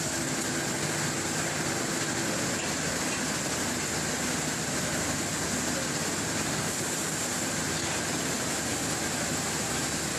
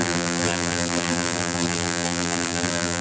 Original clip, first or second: first